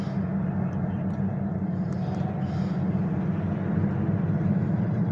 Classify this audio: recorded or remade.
recorded